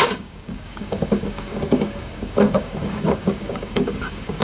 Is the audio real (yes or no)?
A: no